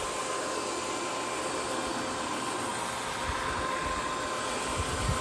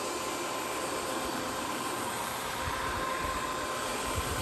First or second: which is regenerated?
second